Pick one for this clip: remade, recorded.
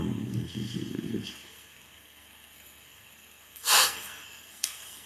remade